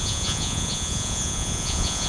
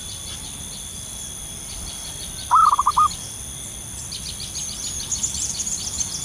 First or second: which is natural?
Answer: second